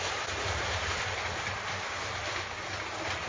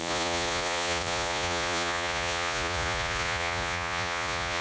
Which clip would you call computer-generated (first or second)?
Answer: second